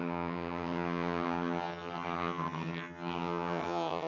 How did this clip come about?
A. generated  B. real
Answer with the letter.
A